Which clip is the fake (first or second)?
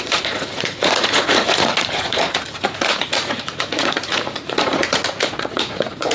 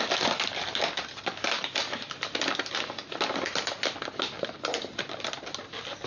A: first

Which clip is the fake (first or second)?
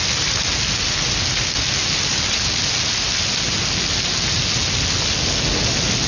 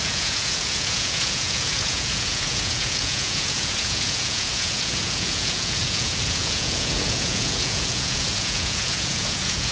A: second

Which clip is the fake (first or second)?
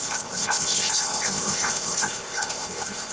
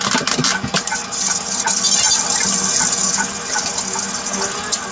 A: first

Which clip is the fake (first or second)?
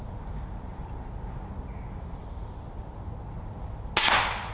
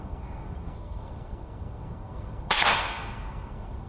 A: second